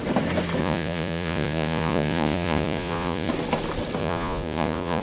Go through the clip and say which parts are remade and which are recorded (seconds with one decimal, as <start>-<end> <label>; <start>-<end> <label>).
0.0-0.6 recorded; 0.6-3.3 remade; 3.3-4.0 recorded; 4.0-5.0 remade